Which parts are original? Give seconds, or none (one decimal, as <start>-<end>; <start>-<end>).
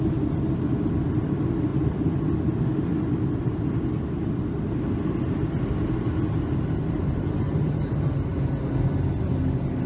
0.0-9.9